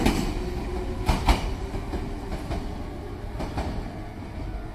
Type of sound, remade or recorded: recorded